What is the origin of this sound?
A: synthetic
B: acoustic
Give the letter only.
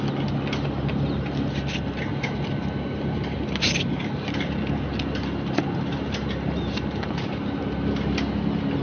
B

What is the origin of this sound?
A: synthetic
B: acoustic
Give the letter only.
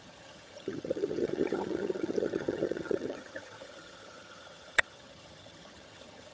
A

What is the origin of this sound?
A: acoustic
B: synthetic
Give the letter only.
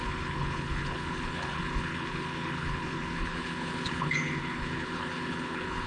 B